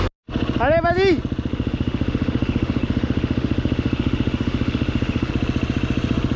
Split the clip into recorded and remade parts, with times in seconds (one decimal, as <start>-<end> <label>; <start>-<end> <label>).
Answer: 0.0-1.5 recorded; 1.5-5.3 remade; 5.3-6.4 recorded